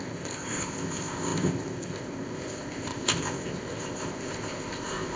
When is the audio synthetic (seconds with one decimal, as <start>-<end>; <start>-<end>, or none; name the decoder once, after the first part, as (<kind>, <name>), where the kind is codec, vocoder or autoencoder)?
0.0-5.2 (codec, ZipCodec)